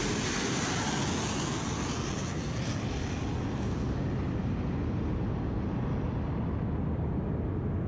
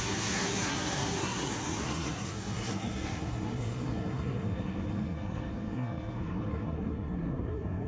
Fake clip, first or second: second